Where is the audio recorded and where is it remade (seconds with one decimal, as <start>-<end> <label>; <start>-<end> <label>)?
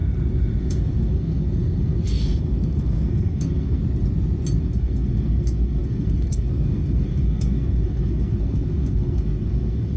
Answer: 0.0-0.6 recorded; 0.6-3.8 remade; 3.8-4.6 recorded; 4.6-10.0 remade